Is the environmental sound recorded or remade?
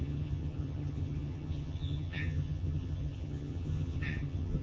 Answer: remade